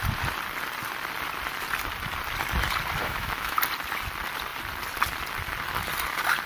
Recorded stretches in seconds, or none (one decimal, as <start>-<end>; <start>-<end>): 0.0-3.0; 3.6-6.5